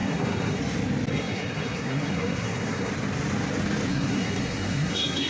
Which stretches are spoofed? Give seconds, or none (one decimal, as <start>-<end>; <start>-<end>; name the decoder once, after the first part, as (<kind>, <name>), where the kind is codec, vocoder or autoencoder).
0.0-0.6 (codec, SNAC); 1.1-2.9; 3.9-5.3